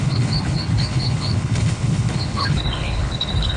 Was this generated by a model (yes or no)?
yes